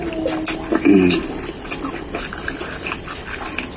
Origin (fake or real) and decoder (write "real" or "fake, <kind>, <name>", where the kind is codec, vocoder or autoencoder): real